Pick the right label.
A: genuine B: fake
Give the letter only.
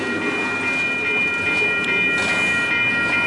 A